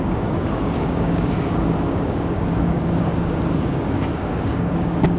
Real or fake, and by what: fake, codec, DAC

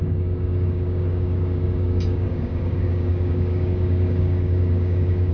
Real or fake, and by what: fake, codec, DAC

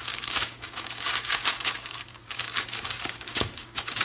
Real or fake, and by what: fake, codec, DAC